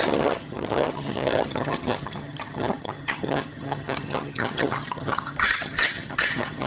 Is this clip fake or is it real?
fake